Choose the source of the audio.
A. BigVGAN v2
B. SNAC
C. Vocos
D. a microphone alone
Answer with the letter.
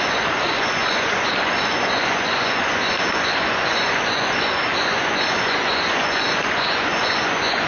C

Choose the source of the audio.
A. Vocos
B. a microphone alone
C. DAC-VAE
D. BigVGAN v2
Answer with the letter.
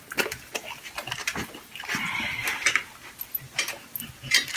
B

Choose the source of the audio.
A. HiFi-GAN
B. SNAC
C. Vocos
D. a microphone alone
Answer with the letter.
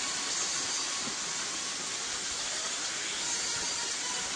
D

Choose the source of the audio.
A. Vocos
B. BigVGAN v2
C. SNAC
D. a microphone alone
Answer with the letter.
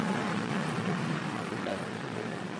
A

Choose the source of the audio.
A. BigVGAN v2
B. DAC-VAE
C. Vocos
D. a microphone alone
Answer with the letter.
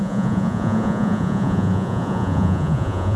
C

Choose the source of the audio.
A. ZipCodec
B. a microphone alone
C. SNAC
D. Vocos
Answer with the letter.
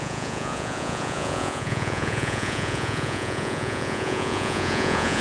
D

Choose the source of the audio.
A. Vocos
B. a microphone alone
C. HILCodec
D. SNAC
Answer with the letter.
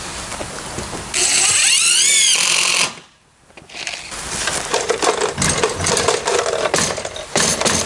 B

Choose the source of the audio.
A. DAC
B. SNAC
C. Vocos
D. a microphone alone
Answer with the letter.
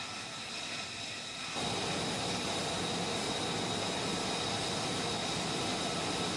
D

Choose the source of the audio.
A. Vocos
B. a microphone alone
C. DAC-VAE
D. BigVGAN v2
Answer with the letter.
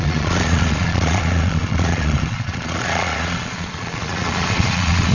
A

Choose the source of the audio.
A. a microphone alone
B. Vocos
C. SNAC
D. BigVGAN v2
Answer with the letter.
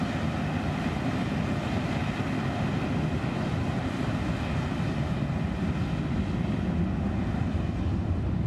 A